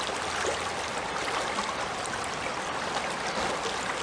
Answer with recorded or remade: remade